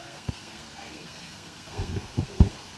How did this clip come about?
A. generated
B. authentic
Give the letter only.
A